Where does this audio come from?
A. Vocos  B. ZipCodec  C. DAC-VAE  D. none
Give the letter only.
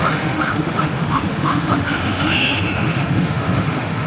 C